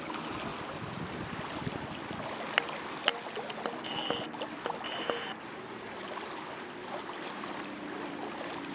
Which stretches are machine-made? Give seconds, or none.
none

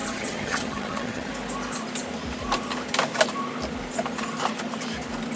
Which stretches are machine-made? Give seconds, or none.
0.0-1.3

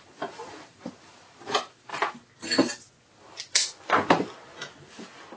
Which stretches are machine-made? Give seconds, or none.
0.0-1.9

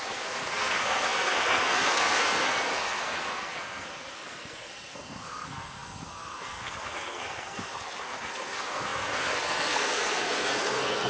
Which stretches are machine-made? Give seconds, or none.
0.0-11.1

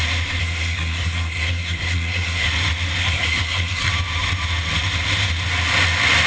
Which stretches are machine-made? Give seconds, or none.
0.4-2.5; 3.0-3.9

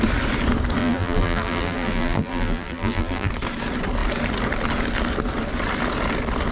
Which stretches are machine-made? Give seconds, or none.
0.8-3.3

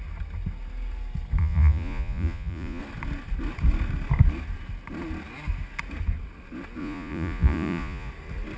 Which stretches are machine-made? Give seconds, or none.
1.4-2.8; 6.8-8.1